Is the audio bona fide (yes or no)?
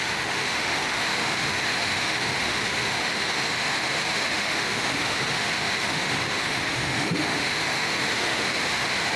no